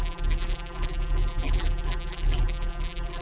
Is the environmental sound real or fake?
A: fake